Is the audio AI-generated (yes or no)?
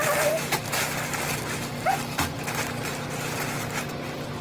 no